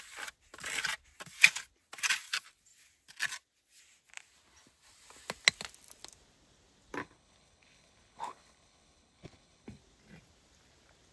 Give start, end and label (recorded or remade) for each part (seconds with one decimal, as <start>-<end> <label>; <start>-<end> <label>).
0.0-7.0 recorded; 7.0-9.8 remade; 9.8-11.1 recorded